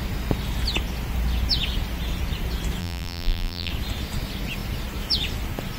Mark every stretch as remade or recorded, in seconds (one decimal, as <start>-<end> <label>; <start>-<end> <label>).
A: 0.0-2.8 recorded; 2.8-3.7 remade; 3.7-5.8 recorded